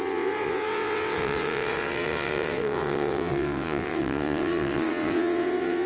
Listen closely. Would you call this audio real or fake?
fake